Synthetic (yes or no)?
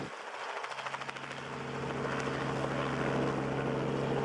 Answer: no